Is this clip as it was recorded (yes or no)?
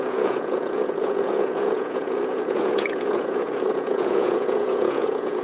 no